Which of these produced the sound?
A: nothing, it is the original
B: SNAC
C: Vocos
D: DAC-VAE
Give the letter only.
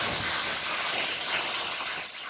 A